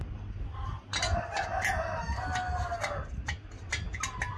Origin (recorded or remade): recorded